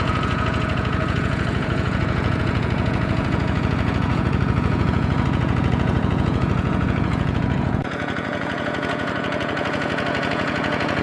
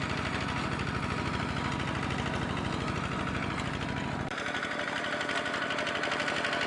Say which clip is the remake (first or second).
first